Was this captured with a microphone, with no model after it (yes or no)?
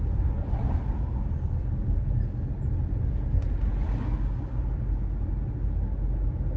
yes